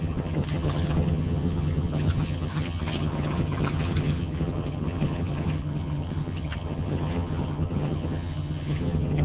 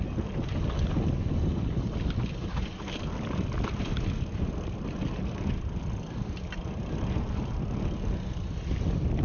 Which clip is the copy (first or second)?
first